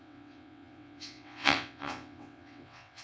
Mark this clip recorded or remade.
remade